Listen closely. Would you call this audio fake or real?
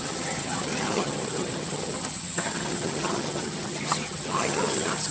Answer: fake